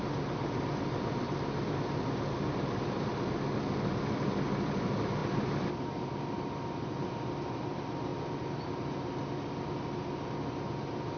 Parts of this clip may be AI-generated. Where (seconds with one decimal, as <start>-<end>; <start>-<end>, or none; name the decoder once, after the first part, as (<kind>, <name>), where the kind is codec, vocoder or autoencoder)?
none